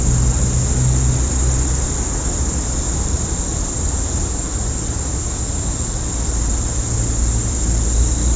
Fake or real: real